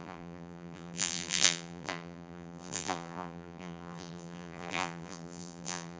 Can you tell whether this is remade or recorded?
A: remade